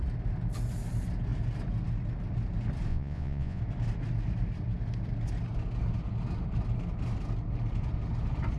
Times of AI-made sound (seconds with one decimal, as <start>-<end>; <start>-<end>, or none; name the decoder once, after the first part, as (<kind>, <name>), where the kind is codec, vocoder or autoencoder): 2.9-3.6 (vocoder, Vocos)